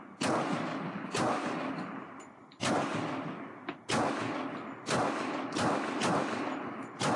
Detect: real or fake real